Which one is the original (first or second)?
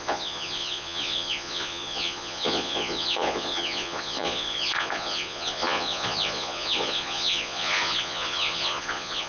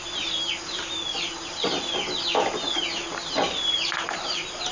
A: second